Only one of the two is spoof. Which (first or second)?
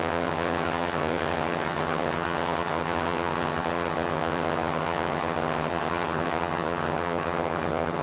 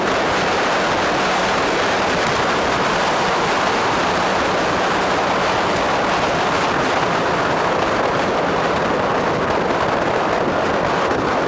first